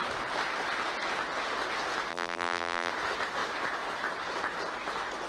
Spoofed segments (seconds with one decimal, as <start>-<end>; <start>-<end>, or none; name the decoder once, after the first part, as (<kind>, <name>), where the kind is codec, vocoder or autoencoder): 2.1-2.9 (vocoder, BigVGAN v2)